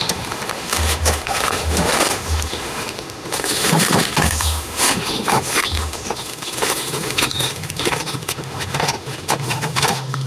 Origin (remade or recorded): remade